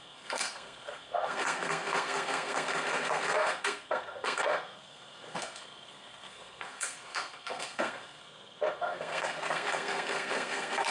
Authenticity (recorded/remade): remade